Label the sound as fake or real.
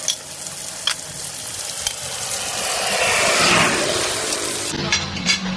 real